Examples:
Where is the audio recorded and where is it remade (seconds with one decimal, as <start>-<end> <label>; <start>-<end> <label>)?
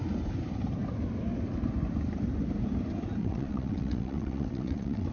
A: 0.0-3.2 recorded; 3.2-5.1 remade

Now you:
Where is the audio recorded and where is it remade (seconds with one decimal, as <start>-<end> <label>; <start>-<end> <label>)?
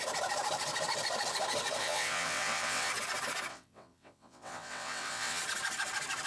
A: 0.0-1.8 recorded; 1.8-2.9 remade; 2.9-3.5 recorded; 3.5-5.4 remade; 5.4-6.3 recorded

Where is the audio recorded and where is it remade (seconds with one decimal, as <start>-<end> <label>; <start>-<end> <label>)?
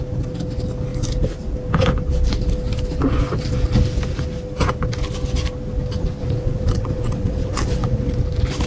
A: 0.0-6.2 recorded; 6.2-8.2 remade; 8.2-8.7 recorded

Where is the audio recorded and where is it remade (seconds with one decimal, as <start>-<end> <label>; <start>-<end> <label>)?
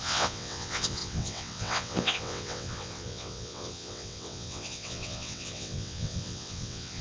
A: 0.0-7.0 remade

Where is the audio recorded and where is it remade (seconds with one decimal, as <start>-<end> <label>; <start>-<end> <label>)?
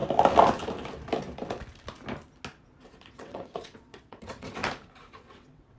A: 0.0-3.1 recorded; 3.1-4.6 remade; 4.6-5.1 recorded; 5.1-5.8 remade